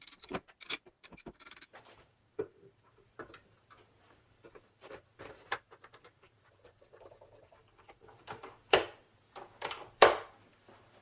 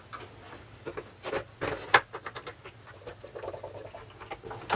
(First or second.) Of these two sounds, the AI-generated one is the first